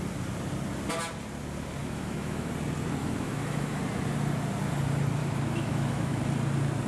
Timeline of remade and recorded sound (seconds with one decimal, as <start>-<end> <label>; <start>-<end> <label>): 0.0-1.8 recorded; 1.8-2.5 remade; 2.5-3.0 recorded; 3.0-3.8 remade; 3.8-5.2 recorded; 5.2-6.2 remade; 6.2-6.9 recorded